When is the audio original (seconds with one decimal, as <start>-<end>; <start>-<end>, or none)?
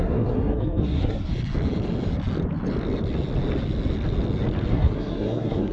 1.3-4.7